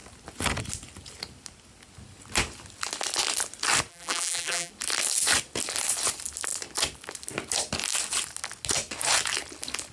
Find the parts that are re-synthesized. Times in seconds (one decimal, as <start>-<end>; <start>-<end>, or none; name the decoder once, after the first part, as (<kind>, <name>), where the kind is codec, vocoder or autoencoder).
3.9-4.7 (vocoder, BigVGAN v2)